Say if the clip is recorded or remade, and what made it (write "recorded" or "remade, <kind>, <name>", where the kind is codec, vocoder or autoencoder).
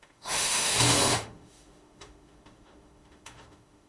remade, autoencoder, DAC-VAE